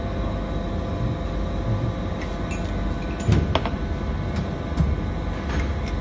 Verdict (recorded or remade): recorded